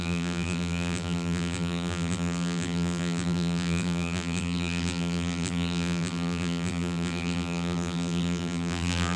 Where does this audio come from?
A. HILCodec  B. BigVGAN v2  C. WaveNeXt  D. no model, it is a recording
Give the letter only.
B